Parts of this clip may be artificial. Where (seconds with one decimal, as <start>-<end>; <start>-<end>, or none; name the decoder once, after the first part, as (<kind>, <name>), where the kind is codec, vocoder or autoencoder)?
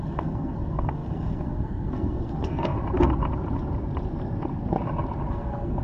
0.0-2.8 (codec, SNAC); 5.3-5.8